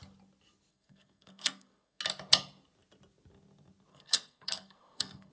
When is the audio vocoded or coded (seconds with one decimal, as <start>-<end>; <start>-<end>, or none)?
0.7-2.0; 3.9-5.3